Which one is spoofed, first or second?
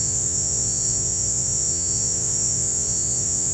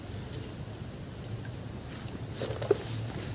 first